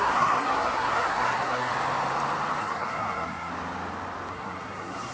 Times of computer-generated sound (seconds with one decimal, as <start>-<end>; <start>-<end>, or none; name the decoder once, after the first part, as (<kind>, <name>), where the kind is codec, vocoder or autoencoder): 0.0-1.7 (codec, SNAC); 2.6-3.5; 4.3-5.1